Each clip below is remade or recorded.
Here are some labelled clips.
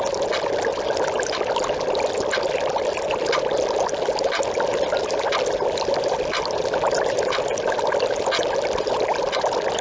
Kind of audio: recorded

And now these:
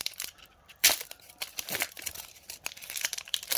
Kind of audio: remade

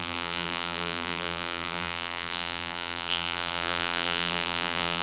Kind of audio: remade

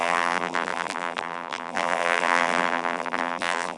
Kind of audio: remade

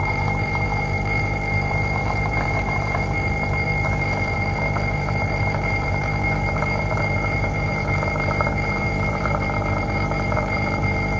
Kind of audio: remade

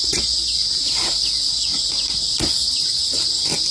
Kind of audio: recorded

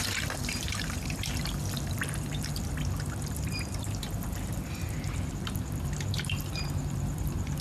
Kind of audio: remade